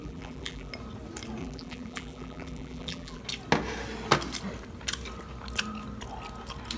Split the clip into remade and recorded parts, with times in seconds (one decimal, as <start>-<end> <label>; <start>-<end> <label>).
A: 0.0-0.7 remade; 0.7-1.4 recorded; 1.4-3.2 remade; 3.2-6.8 recorded